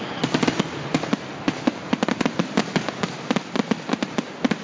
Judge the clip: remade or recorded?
recorded